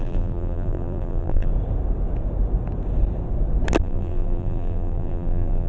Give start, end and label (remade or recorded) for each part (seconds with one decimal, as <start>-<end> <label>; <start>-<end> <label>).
0.0-1.5 remade; 1.5-3.8 recorded; 3.8-5.7 remade